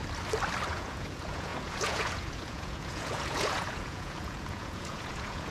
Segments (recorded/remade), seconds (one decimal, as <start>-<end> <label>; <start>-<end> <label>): 0.0-0.7 recorded; 0.7-5.5 remade